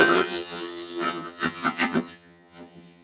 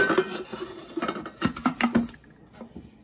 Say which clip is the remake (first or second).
first